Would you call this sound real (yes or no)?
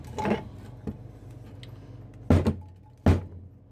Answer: yes